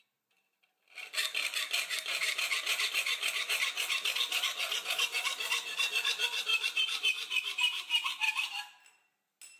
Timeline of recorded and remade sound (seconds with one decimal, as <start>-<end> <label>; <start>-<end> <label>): 0.0-9.6 recorded